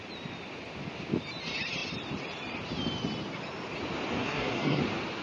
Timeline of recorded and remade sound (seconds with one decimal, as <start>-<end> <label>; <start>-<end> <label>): 0.0-4.2 recorded; 4.2-4.8 remade; 4.8-5.2 recorded